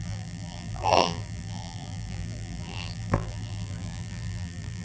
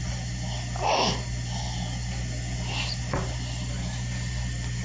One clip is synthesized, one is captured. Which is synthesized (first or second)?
first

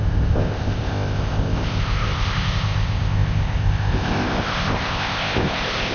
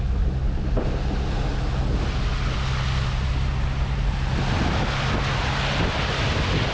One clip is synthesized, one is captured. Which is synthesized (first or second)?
first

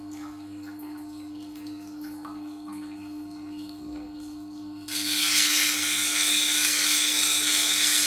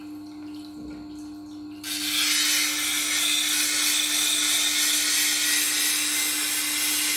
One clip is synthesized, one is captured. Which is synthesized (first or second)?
first